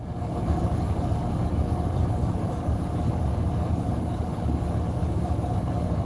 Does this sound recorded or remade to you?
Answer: remade